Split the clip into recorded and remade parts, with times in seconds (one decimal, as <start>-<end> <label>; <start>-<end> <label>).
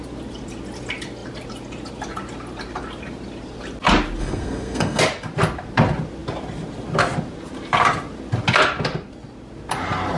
0.0-4.2 recorded; 4.2-5.0 remade; 5.0-10.2 recorded